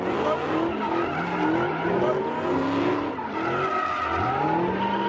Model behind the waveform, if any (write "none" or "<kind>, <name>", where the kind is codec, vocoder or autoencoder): none